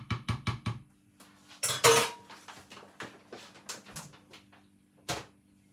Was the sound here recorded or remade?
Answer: recorded